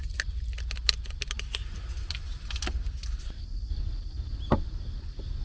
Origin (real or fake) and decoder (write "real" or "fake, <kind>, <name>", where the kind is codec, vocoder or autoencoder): real